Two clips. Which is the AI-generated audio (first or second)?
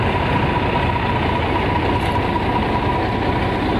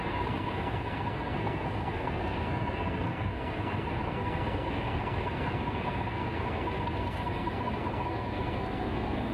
second